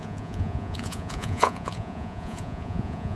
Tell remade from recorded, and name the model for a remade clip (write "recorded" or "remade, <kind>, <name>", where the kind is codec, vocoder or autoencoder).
remade, vocoder, Vocos